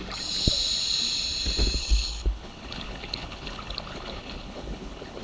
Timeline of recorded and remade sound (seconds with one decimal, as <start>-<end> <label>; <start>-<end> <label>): 0.0-1.8 recorded; 1.8-5.2 remade

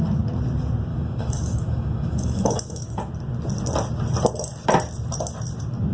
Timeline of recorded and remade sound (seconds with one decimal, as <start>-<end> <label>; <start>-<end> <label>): 0.0-0.9 recorded; 0.9-3.1 remade; 3.1-5.9 recorded

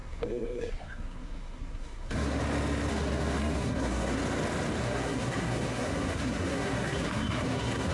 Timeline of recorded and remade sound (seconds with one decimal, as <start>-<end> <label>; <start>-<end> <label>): 0.0-2.4 remade; 2.4-2.9 recorded; 2.9-4.2 remade; 4.2-4.8 recorded; 4.8-7.9 remade